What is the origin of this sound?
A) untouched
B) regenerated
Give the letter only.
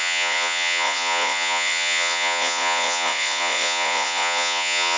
B